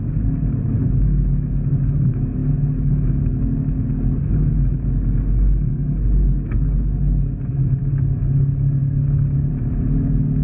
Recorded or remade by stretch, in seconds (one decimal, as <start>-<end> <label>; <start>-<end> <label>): 0.0-10.4 recorded